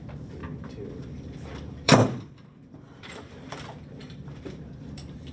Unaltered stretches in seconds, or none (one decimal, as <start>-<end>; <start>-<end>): 0.0-0.4; 3.6-4.0